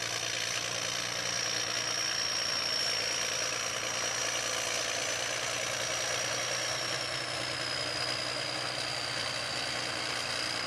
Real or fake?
real